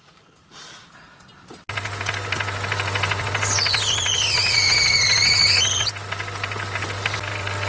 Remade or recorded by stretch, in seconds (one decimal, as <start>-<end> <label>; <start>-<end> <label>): 0.0-7.7 recorded